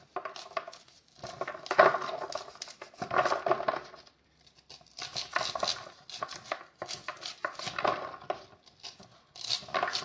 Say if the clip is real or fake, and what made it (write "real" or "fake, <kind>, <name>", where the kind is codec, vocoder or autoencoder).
real